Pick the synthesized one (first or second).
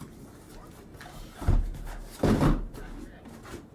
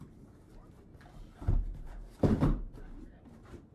second